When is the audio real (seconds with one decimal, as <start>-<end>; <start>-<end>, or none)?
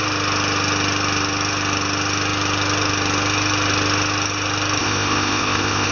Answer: 0.0-4.8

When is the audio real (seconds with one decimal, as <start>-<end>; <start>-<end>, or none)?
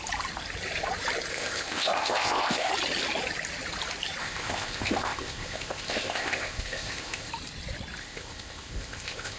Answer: 0.0-1.3; 2.7-4.2; 7.3-8.0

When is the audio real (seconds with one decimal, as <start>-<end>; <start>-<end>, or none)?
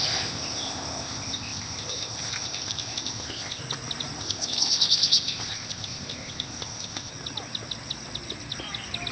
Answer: 3.6-4.2; 7.1-9.1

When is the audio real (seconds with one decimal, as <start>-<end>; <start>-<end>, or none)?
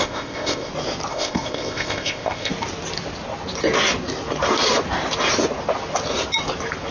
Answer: 0.7-1.1; 2.5-6.9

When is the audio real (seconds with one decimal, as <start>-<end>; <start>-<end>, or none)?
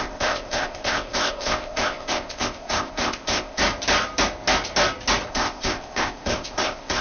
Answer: 3.6-5.3